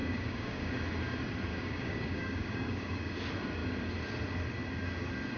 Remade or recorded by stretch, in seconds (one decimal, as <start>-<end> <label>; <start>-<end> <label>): 0.0-0.8 remade; 0.8-1.5 recorded; 1.5-3.1 remade; 3.1-5.4 recorded